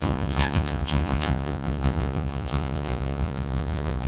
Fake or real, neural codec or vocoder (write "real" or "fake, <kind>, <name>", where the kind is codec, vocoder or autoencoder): fake, vocoder, Vocos